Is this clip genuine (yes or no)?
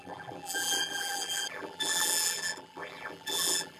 no